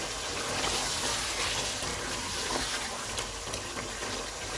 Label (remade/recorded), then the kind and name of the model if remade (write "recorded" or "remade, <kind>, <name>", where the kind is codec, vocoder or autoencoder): recorded